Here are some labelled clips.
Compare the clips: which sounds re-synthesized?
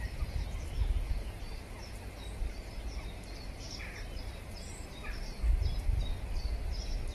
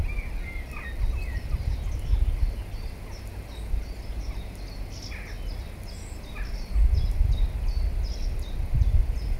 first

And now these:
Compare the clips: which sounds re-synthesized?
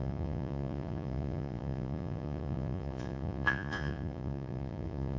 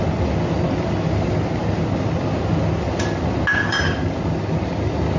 first